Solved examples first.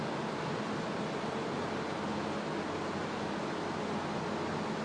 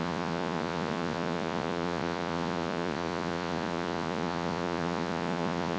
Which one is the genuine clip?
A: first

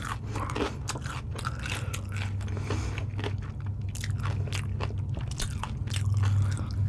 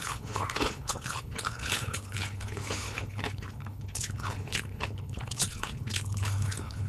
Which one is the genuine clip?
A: first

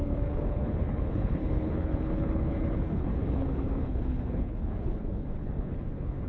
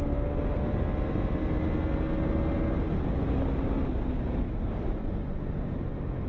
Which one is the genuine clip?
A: second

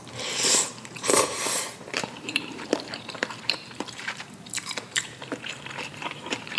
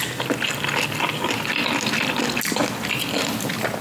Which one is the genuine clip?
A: second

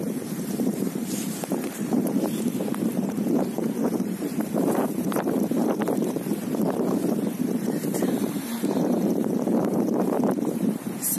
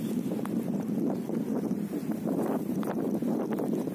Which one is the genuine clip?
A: second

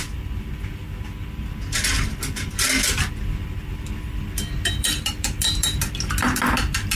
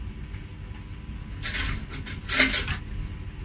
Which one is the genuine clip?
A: second